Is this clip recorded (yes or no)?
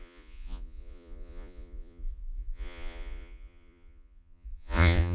no